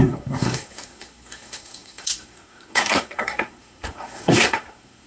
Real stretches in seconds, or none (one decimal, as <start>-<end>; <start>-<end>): none